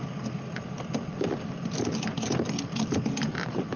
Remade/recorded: recorded